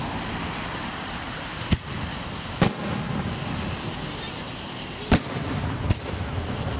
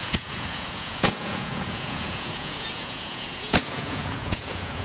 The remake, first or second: second